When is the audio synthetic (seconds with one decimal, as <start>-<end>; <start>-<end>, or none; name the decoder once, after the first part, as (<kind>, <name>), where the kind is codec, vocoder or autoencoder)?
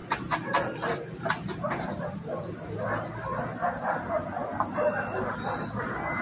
none